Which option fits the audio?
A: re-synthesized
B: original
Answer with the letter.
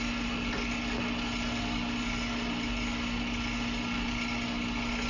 B